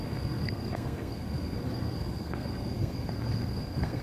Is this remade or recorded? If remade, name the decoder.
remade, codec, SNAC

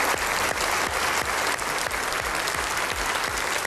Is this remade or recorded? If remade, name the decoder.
recorded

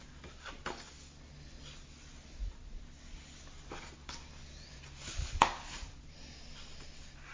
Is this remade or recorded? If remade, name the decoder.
recorded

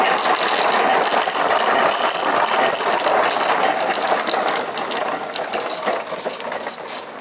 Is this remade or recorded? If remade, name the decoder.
recorded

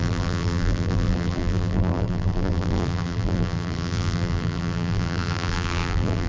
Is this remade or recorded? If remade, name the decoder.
remade, vocoder, BigVGAN v2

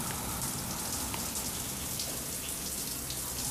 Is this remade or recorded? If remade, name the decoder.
recorded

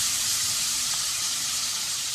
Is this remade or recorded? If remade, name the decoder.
remade, vocoder, BigVGAN v2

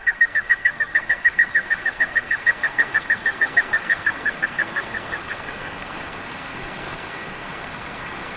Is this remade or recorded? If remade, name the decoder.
remade, codec, SNAC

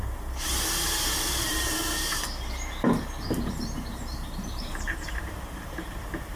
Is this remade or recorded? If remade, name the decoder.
remade, vocoder, BigVGAN v2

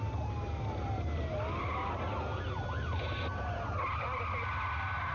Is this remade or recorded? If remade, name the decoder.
recorded